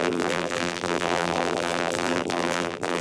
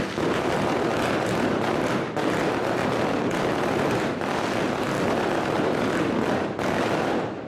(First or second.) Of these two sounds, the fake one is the first